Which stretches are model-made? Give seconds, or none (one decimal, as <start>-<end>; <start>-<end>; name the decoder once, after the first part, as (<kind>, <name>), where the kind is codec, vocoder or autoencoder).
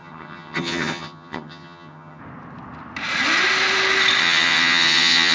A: 0.0-2.2 (vocoder, HiFi-GAN); 4.2-5.3